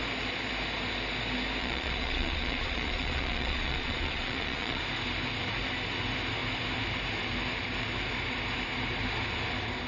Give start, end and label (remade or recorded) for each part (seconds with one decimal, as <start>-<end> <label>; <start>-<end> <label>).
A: 0.0-1.6 recorded; 1.6-4.8 remade; 4.8-9.9 recorded

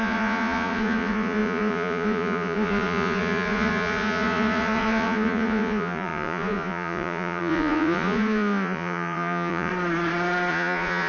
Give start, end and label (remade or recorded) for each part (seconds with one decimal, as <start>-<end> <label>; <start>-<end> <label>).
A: 0.0-9.7 remade; 9.7-10.5 recorded; 10.5-11.1 remade

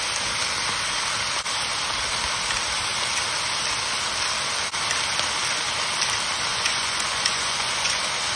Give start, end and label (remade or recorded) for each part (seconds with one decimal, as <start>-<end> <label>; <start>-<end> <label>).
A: 0.0-6.5 recorded; 6.5-8.0 remade; 8.0-8.4 recorded

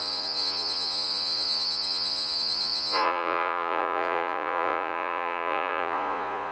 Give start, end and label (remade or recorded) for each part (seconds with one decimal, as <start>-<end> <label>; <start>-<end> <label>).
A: 0.0-6.5 remade